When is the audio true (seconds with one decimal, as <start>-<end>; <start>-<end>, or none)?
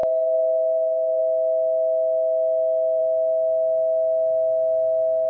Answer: 1.2-5.3